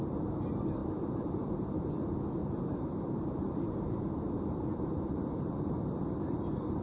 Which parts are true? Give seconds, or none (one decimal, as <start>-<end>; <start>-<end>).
0.0-0.8; 1.9-2.4

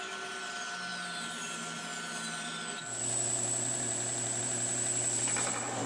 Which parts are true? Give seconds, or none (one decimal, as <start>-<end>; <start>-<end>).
0.0-5.9

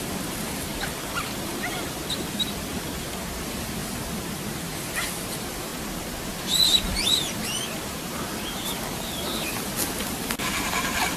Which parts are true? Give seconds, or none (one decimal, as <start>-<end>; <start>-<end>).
3.8-4.6; 5.7-6.3